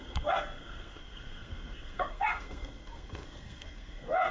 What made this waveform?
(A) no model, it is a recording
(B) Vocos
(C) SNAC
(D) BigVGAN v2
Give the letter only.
C